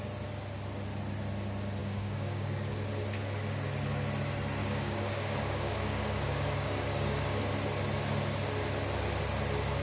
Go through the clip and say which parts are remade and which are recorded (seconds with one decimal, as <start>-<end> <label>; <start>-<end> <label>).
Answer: 0.0-1.8 recorded; 1.8-2.7 remade; 2.7-4.6 recorded; 4.6-7.4 remade; 7.4-9.8 recorded